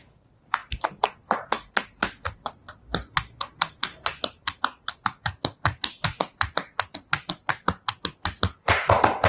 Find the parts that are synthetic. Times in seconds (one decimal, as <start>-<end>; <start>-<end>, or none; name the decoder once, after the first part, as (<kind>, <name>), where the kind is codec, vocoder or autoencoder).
0.0-5.0 (vocoder, BigVGAN v2); 8.6-9.3

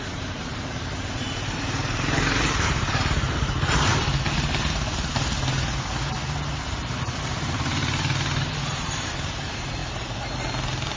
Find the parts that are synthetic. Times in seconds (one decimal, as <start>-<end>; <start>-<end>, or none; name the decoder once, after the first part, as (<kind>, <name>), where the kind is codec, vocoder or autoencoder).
0.0-3.9 (vocoder, BigVGAN v2); 7.2-9.8

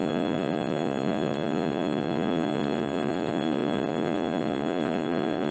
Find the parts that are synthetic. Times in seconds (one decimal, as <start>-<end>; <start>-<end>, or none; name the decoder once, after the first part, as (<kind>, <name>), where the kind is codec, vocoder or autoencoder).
0.0-5.5 (vocoder, Vocos)

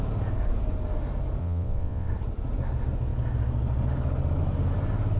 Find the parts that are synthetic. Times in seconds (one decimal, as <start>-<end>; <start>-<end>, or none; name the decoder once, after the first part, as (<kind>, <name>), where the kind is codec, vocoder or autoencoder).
1.4-2.1 (vocoder, WaveNeXt)

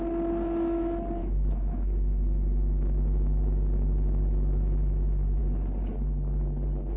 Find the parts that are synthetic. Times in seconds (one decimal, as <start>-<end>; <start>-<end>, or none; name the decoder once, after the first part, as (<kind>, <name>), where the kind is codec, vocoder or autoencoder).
1.2-5.4 (autoencoder, DAC-VAE)